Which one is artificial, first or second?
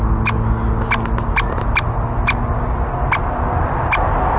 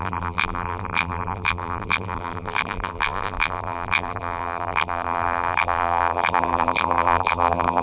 second